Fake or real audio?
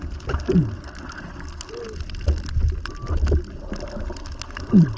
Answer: real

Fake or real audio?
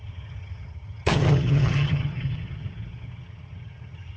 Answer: fake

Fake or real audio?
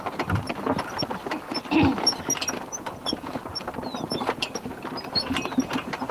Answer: real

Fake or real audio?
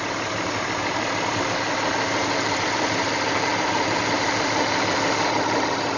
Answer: real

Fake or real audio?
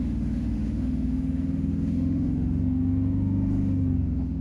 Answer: fake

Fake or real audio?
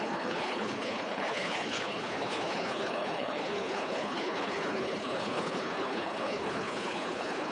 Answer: fake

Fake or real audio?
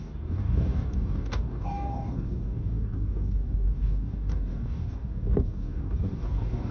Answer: fake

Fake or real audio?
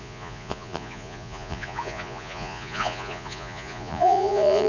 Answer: fake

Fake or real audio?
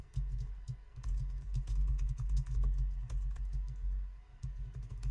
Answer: fake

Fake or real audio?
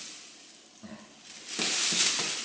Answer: real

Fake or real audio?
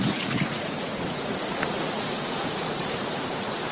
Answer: fake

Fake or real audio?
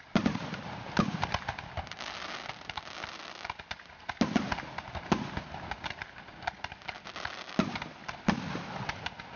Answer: real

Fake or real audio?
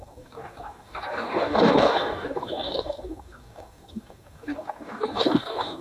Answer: fake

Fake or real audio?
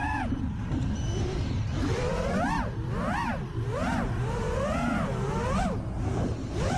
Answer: fake